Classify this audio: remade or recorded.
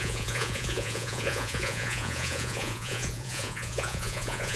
remade